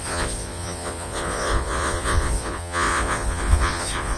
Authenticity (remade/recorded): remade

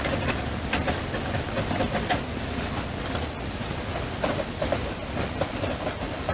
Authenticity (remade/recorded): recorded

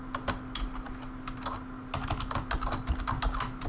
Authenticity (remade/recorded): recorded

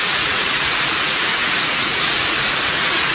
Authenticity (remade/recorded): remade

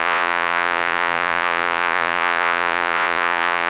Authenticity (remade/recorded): remade